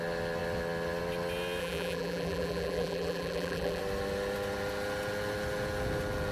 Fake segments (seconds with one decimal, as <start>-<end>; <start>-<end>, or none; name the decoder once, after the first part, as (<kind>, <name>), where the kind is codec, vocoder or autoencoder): 1.6-3.8 (vocoder, BigVGAN v2)